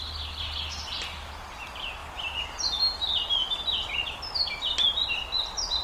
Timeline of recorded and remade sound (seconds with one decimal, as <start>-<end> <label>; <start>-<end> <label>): 0.0-5.8 recorded